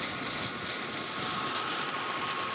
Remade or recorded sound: recorded